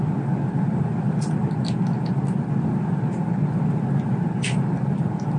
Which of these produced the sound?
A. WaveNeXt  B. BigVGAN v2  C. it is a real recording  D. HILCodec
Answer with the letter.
C